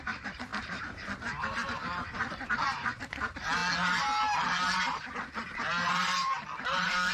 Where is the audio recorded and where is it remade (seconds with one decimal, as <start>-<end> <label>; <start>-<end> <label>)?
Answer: 0.0-3.6 remade; 3.6-4.6 recorded; 4.6-7.1 remade